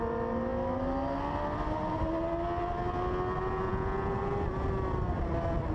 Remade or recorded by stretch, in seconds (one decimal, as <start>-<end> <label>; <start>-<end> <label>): 0.0-5.7 recorded